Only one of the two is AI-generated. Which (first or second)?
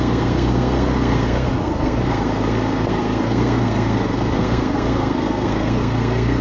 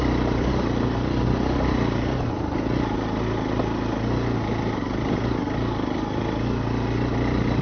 first